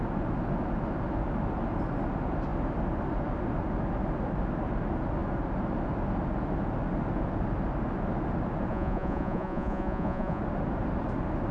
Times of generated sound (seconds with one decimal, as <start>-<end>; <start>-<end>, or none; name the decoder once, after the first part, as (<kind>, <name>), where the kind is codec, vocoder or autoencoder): 8.7-10.4 (vocoder, Vocos)